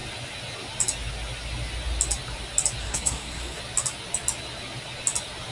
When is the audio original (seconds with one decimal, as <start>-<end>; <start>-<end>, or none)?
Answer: 0.0-2.8; 3.6-5.5